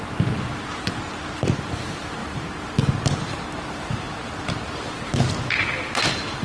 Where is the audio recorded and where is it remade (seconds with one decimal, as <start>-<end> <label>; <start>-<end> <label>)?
0.0-2.2 recorded; 2.2-5.0 remade; 5.0-6.4 recorded